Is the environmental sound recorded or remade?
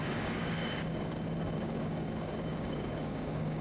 remade